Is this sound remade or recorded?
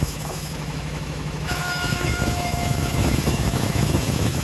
remade